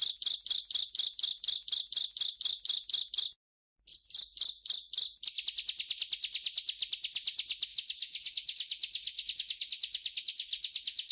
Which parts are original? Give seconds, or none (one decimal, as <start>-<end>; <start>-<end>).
0.0-7.7